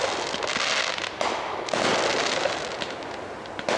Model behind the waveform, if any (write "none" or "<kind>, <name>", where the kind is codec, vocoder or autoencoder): none